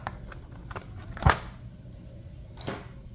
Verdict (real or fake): real